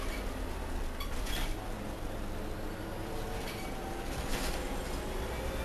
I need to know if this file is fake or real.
real